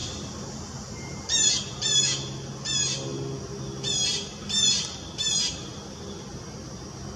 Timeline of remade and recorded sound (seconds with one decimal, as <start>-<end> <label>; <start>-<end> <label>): 0.0-1.5 remade; 1.5-7.2 recorded